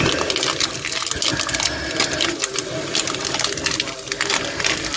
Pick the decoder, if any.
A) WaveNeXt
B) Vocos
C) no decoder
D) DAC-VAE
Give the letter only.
C